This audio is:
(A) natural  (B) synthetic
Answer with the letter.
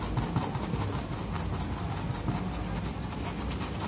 A